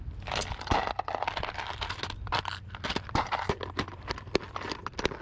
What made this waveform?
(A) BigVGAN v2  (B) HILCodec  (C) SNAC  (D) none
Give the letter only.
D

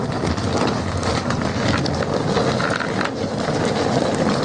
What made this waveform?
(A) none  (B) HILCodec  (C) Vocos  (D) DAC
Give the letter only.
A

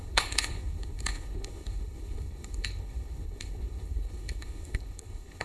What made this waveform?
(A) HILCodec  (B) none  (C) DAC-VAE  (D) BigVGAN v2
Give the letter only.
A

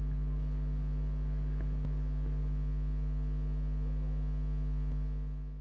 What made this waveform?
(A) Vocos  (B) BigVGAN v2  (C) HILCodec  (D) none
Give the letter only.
D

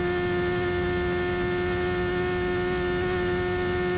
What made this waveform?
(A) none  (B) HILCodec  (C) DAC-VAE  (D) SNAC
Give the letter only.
A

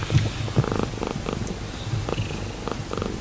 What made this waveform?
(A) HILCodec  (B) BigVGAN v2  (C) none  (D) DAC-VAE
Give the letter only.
C